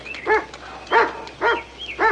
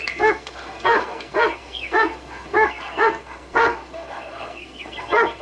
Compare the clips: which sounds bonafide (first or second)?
first